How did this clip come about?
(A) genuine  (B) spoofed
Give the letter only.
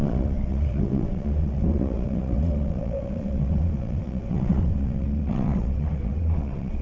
B